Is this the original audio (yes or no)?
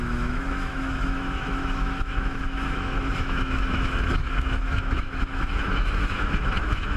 no